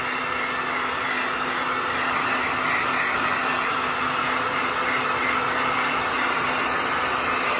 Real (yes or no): yes